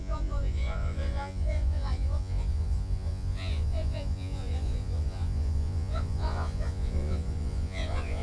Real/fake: fake